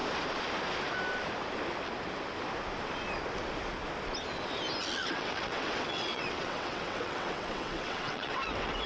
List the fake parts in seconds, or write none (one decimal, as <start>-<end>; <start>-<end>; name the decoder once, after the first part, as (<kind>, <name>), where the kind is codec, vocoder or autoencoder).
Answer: 5.0-8.9 (vocoder, WaveNeXt)